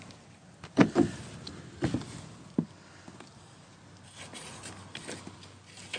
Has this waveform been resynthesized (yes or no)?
no